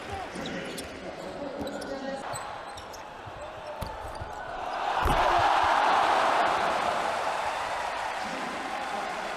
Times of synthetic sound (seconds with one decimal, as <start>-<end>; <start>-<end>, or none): 3.0-9.4